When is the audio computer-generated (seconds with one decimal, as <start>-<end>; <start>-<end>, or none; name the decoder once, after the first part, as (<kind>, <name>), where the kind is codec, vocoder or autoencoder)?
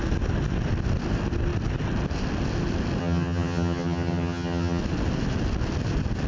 3.0-4.8 (vocoder, HiFi-GAN)